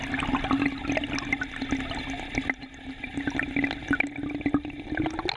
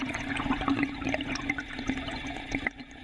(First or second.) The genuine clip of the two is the first